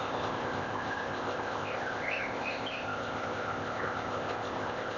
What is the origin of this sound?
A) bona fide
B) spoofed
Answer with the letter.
B